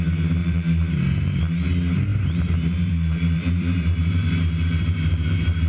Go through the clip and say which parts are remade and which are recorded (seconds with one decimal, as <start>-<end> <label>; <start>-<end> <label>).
0.0-0.4 recorded; 0.4-1.4 remade; 1.4-2.1 recorded; 2.1-5.7 remade